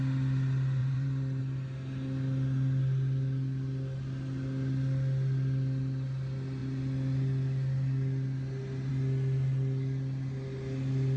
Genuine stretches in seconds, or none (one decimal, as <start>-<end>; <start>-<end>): 0.0-0.8; 1.4-11.2